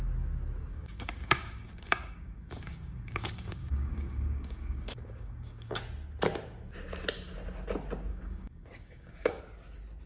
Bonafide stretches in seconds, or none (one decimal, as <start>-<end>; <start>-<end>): 0.0-0.7; 5.8-8.1; 9.4-10.1